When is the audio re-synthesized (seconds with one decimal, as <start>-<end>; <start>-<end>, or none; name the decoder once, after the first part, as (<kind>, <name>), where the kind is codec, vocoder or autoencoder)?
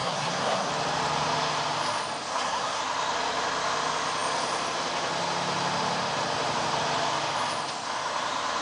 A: 0.0-0.7 (codec, SNAC); 2.3-2.8